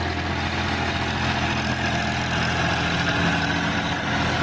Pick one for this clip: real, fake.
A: real